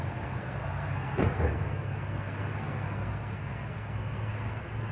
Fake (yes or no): yes